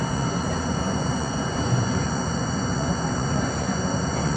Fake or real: fake